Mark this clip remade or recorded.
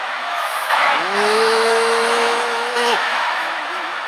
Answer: remade